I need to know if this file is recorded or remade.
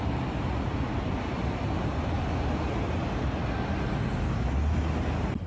recorded